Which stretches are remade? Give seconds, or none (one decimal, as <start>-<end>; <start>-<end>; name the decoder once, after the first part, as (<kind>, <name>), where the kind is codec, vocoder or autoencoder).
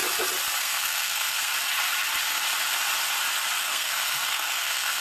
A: 0.6-1.5 (codec, SNAC); 3.6-5.0